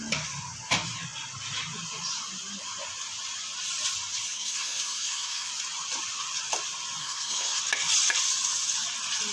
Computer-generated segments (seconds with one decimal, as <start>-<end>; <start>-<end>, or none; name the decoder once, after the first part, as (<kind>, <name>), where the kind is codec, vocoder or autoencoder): 4.3-5.5 (codec, SNAC); 7.0-7.6